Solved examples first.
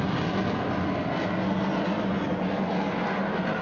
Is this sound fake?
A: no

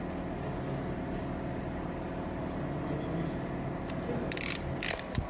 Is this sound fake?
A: no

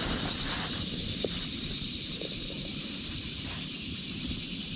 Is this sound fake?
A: yes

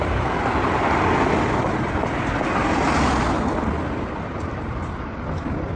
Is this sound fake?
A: no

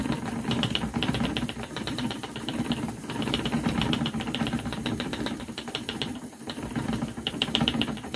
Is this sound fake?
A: yes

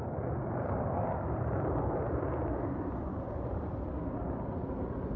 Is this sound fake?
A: yes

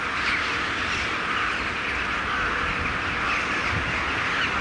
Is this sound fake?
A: no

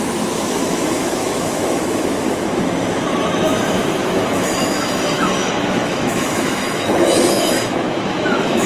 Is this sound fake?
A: yes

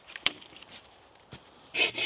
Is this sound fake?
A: yes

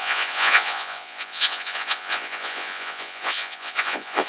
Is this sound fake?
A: yes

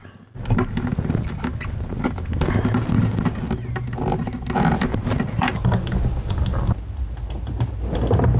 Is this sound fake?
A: no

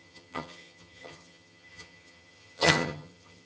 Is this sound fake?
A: yes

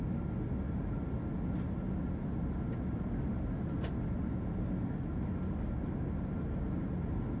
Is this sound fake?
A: no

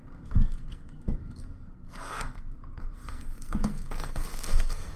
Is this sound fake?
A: yes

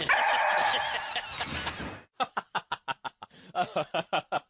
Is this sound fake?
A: no